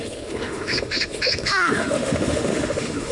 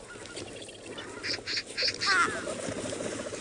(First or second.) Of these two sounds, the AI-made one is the first